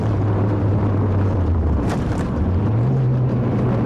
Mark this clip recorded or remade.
remade